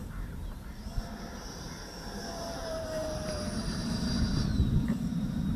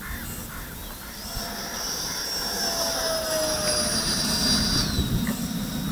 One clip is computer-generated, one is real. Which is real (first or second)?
second